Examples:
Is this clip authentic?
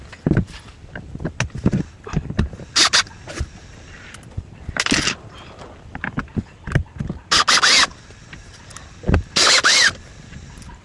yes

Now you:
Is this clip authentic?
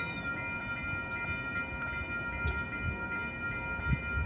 yes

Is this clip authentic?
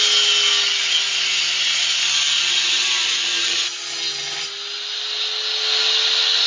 yes